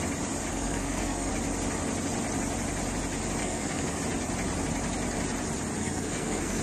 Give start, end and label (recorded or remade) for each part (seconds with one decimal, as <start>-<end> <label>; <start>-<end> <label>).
0.0-0.5 recorded; 0.5-1.3 remade; 1.3-3.4 recorded; 3.4-4.0 remade; 4.0-5.8 recorded; 5.8-6.6 remade

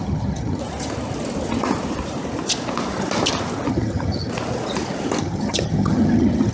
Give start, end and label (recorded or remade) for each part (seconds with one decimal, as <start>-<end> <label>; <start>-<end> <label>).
0.0-0.6 remade; 0.6-3.7 recorded; 3.7-4.3 remade; 4.3-5.2 recorded; 5.2-6.5 remade

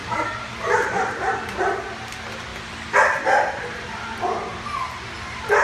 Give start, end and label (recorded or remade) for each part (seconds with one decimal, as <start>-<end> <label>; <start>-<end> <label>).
0.0-1.6 remade; 1.6-4.5 recorded; 4.5-5.6 remade

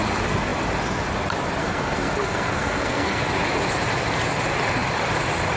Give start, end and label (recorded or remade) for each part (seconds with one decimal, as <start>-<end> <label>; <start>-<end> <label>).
0.0-1.6 recorded; 1.6-3.2 remade; 3.2-5.6 recorded

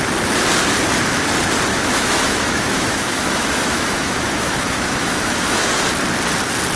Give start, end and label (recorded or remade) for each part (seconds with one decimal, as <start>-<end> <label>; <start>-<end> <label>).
0.0-1.7 recorded; 1.7-5.7 remade; 5.7-6.8 recorded

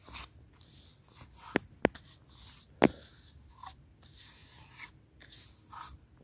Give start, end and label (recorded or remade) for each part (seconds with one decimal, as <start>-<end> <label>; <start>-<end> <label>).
0.0-6.2 recorded

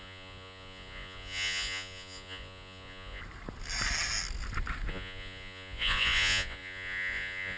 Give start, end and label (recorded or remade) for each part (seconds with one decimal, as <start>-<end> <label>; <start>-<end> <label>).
0.0-3.2 remade; 3.2-4.9 recorded; 4.9-7.6 remade